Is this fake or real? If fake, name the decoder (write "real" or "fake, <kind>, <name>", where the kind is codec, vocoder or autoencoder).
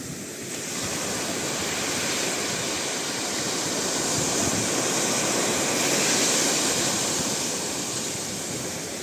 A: real